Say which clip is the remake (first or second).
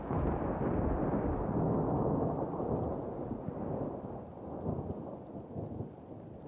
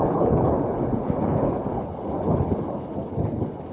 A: second